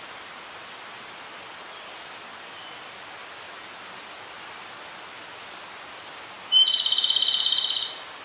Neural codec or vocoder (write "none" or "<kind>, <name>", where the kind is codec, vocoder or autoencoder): none